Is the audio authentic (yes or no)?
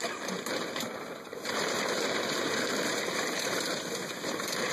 no